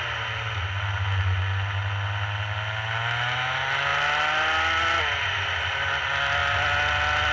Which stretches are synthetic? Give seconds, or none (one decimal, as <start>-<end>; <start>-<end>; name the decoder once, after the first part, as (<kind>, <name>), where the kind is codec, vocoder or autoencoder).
none